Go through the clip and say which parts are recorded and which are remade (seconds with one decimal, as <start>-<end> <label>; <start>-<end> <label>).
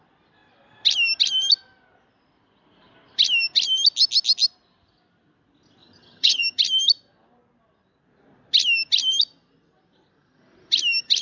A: 0.0-5.8 recorded; 5.8-6.4 remade; 6.4-11.2 recorded